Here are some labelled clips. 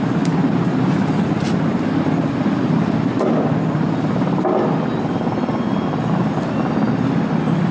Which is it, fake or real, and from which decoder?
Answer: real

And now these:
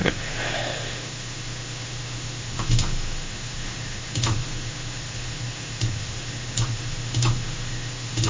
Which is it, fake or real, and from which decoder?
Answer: fake, autoencoder, DAC-VAE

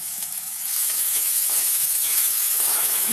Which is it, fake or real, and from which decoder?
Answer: fake, autoencoder, DAC-VAE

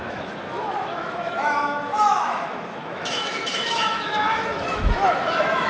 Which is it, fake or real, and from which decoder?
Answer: fake, autoencoder, DAC-VAE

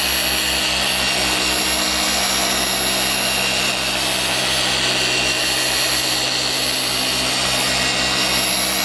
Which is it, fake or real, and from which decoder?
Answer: real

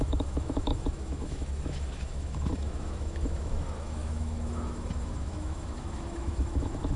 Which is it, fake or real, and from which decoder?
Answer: fake, autoencoder, DAC-VAE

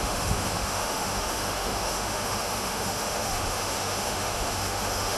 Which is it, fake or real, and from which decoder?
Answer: fake, autoencoder, DAC-VAE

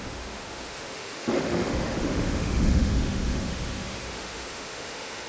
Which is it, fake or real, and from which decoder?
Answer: fake, autoencoder, DAC-VAE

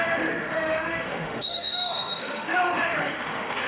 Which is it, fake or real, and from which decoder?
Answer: fake, autoencoder, DAC-VAE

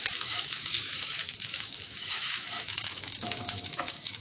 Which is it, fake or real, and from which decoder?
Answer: fake, autoencoder, DAC-VAE